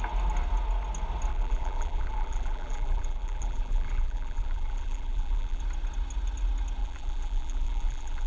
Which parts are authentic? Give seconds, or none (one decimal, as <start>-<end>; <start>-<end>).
0.0-1.3; 5.6-6.8